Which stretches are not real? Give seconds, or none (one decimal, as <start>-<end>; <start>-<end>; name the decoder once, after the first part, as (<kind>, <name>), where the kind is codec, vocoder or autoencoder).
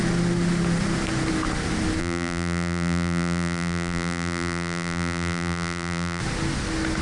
2.0-6.2 (vocoder, BigVGAN v2)